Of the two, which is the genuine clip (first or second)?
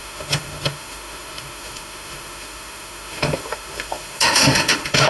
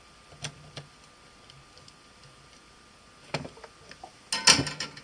second